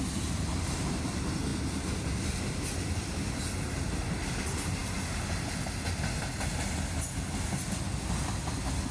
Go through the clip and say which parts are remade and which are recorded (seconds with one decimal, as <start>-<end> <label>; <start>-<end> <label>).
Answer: 0.0-8.9 recorded